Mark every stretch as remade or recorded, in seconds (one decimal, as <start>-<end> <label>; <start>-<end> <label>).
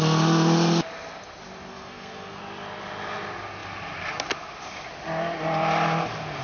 0.0-1.7 recorded; 1.7-2.4 remade; 2.4-6.4 recorded